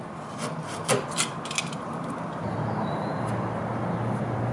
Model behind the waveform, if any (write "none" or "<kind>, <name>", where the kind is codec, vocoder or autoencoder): none